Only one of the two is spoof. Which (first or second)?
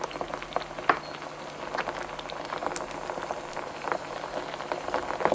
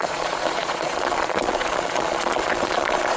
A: second